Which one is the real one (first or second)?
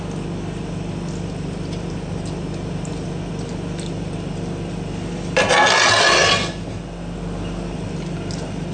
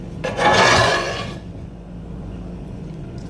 first